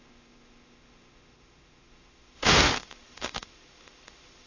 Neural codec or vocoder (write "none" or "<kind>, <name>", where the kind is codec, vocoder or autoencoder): autoencoder, DAC-VAE